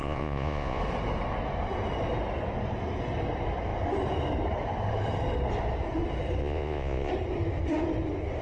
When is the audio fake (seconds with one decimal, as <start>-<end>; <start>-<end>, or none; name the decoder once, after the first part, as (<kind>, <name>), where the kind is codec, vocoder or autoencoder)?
0.0-0.8 (vocoder, Vocos); 6.4-7.1